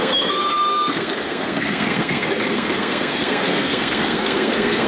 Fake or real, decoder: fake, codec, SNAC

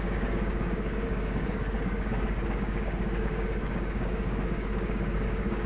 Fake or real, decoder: fake, codec, DAC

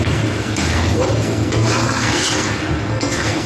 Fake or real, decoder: fake, codec, SNAC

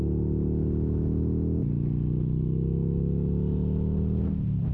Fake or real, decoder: real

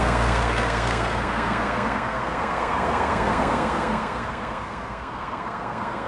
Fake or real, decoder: fake, codec, SNAC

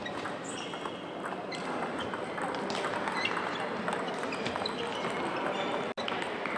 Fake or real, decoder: real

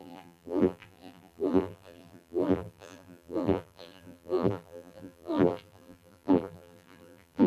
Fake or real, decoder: fake, vocoder, BigVGAN v2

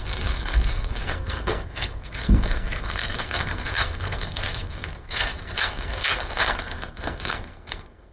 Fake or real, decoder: fake, codec, SNAC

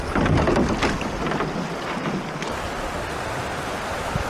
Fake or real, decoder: real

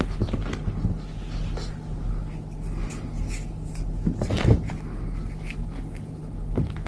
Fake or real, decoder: real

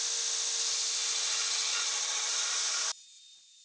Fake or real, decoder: real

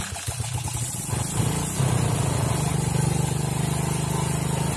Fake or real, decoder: real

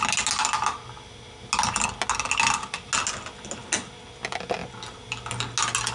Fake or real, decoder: real